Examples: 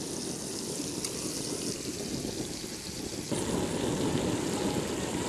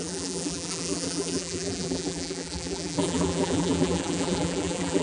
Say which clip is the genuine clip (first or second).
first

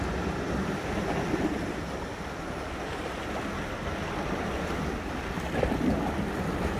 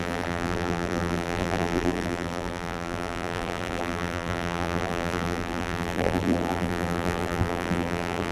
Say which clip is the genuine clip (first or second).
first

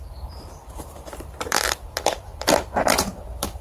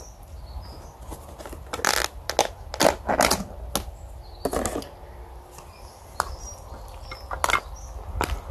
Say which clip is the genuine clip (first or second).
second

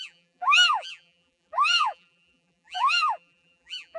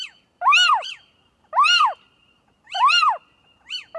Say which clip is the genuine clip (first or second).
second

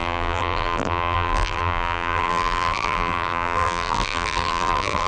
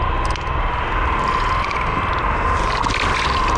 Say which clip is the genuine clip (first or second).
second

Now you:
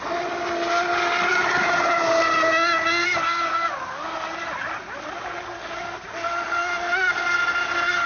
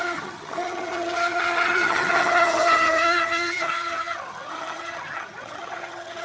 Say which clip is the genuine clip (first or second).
first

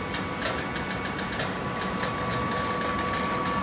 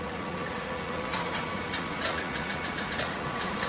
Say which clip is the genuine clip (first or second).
first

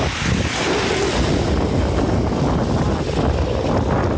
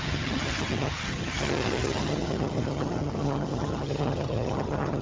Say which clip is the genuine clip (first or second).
first